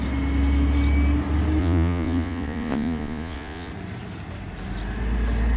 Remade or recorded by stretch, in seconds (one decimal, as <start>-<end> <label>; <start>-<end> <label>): 0.0-1.6 recorded; 1.6-3.7 remade; 3.7-5.6 recorded